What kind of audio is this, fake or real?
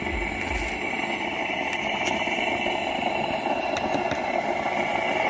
real